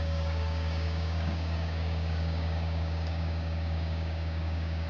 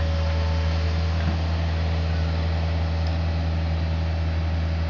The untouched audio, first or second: second